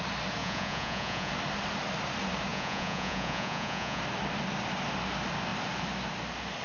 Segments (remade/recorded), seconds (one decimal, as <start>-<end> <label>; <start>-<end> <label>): 0.0-0.4 recorded; 0.4-1.3 remade; 1.3-2.5 recorded; 2.5-4.0 remade; 4.0-6.6 recorded